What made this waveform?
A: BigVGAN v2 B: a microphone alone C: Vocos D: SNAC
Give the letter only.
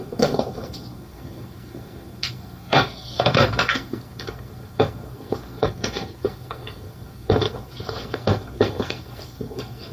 D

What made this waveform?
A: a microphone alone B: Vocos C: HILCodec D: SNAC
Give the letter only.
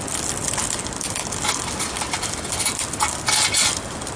A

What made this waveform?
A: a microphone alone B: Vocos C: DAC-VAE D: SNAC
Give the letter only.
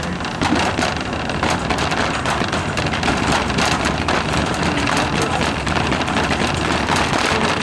A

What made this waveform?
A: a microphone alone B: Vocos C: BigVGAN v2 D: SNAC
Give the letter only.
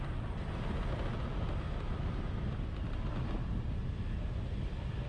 A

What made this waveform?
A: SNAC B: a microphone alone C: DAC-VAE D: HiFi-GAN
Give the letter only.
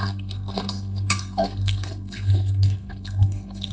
A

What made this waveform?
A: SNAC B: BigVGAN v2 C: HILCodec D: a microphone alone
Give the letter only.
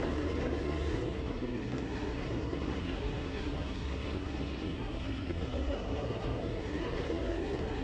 A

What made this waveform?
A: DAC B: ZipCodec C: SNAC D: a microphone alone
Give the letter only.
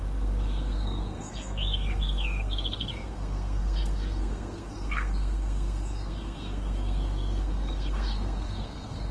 C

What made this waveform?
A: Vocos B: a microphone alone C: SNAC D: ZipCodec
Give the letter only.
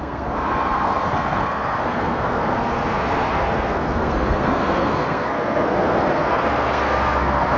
C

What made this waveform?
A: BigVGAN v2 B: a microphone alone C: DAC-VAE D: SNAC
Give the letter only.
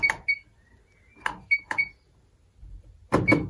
B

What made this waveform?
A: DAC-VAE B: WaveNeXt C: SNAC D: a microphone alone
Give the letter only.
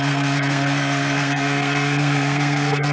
C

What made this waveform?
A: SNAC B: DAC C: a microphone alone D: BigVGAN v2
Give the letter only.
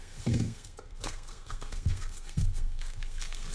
A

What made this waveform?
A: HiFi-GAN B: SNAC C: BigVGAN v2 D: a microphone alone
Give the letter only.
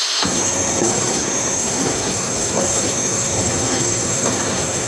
B